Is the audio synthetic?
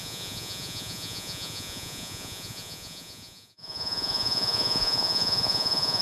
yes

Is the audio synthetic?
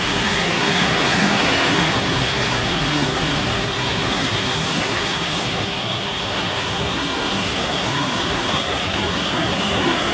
yes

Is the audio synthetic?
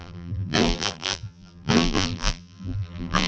yes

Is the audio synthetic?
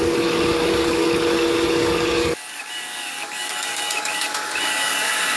yes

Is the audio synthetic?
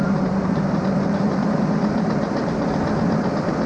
yes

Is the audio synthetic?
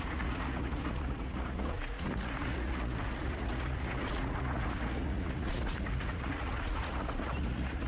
yes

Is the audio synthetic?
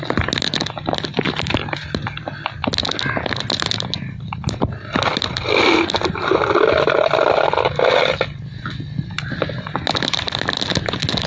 no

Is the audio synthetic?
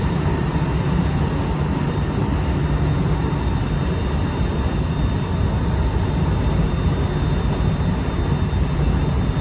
no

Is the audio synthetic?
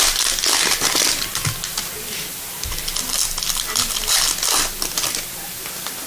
no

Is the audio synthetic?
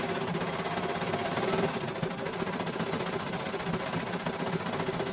no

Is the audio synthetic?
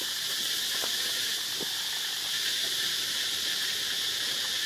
no